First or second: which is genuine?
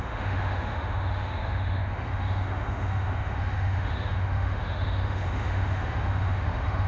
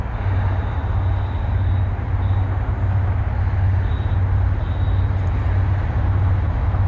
second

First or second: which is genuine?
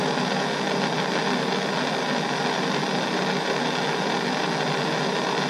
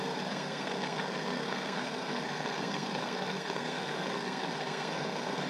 first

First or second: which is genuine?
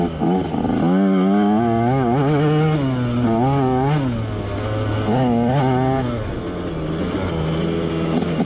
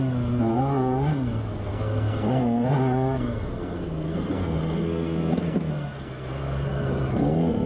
first